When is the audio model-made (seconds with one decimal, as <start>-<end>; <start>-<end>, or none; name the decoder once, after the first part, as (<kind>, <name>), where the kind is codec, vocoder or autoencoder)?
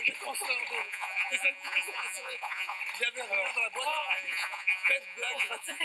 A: 0.8-2.8 (vocoder, Vocos); 3.9-5.8